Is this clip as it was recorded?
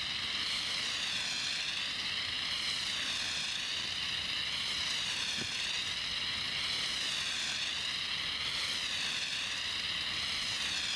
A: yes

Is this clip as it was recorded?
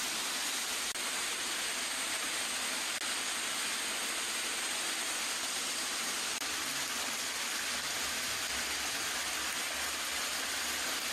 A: yes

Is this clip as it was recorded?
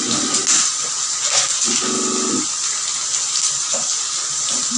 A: yes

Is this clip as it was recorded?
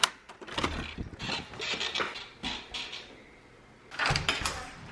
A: yes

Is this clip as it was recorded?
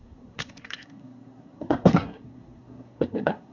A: no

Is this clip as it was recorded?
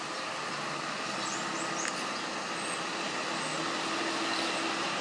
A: yes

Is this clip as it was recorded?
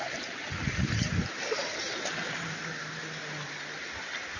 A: yes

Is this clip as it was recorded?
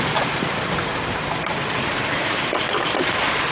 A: no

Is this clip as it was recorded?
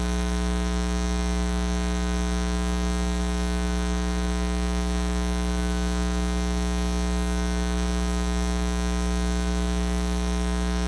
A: no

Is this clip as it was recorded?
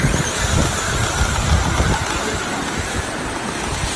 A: yes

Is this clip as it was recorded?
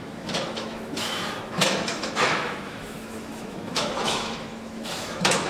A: no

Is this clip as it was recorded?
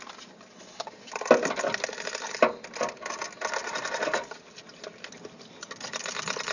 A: yes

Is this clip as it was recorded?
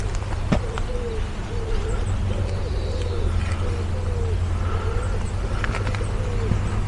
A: yes